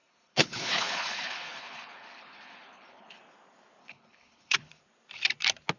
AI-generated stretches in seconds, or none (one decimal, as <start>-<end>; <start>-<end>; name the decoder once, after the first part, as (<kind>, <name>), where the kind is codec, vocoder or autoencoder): 0.0-3.2 (codec, HILCodec); 3.8-4.8